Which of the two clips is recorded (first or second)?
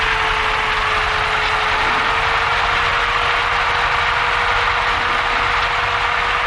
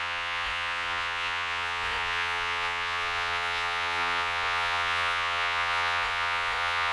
first